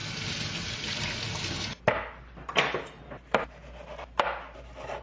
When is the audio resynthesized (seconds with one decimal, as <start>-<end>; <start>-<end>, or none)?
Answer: none